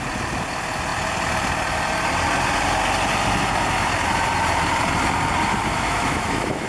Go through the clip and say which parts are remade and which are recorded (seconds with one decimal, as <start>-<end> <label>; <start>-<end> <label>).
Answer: 0.0-5.7 recorded; 5.7-6.7 remade